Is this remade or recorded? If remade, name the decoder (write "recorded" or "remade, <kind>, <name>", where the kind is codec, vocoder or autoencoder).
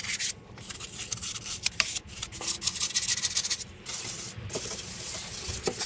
recorded